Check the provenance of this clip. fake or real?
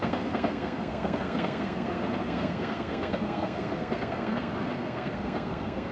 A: fake